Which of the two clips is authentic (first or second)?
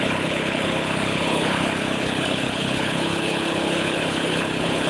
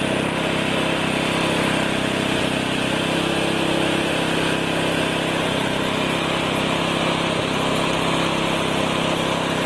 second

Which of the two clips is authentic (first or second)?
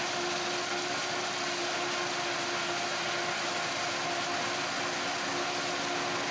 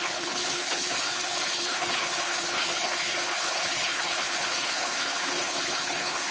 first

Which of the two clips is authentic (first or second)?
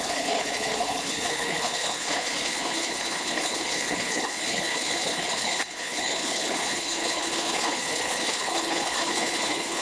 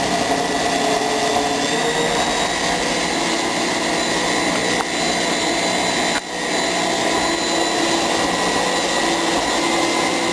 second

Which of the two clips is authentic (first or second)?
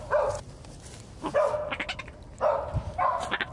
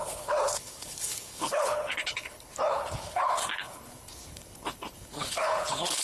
first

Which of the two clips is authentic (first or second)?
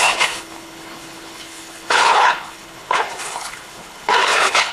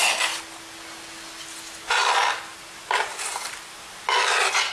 second